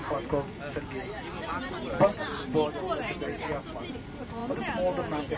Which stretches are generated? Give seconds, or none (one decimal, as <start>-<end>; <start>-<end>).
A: none